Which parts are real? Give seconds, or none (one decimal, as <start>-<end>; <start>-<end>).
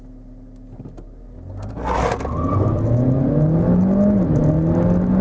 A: 0.0-5.2